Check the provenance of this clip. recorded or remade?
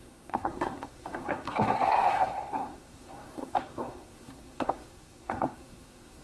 remade